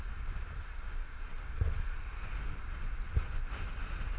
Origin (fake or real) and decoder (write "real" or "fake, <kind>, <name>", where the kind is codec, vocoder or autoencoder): real